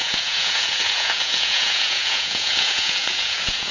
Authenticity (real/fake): fake